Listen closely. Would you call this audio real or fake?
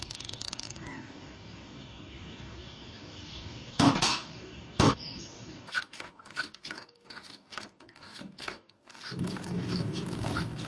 fake